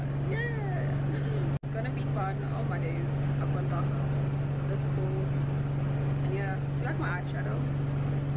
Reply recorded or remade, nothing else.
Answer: recorded